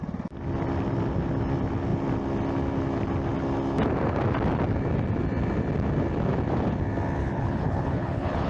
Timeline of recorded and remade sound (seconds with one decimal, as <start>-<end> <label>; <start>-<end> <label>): 0.0-7.2 recorded; 7.2-8.5 remade